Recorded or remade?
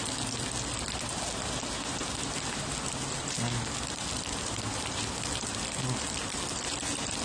recorded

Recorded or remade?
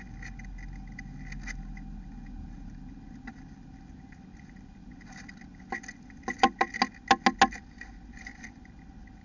recorded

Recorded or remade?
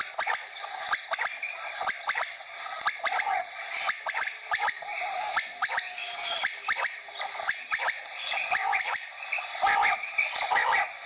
remade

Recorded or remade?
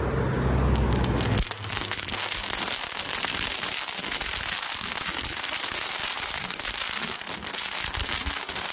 recorded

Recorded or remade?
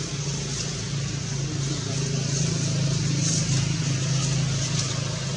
recorded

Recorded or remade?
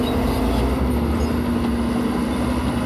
recorded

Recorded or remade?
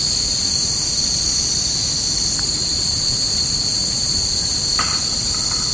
remade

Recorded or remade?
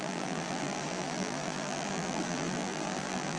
remade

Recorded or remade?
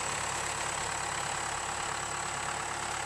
recorded